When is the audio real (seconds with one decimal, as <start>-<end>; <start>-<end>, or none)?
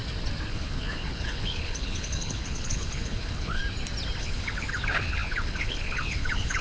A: 0.0-0.5; 3.6-4.2